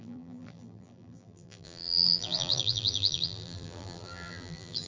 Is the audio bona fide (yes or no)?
no